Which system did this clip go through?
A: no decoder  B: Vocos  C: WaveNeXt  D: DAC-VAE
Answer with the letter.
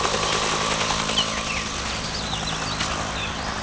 A